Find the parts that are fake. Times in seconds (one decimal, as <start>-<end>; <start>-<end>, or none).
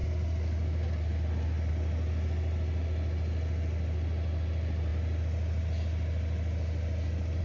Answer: none